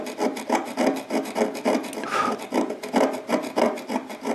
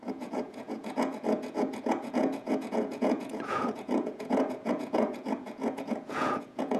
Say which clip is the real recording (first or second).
first